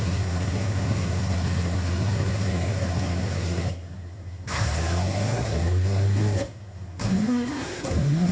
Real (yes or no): no